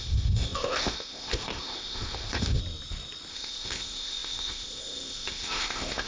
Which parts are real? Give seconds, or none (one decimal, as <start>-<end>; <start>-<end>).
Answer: 2.6-3.3